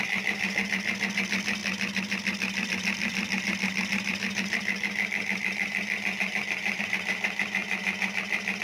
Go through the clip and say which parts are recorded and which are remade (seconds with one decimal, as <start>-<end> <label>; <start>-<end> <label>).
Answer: 0.0-1.6 recorded; 1.6-6.8 remade; 6.8-8.6 recorded